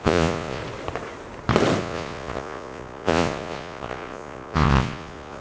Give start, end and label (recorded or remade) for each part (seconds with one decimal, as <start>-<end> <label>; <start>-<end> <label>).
0.0-0.6 remade; 0.6-1.8 recorded; 1.8-5.4 remade